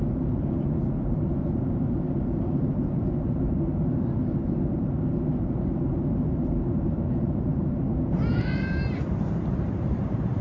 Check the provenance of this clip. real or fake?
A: fake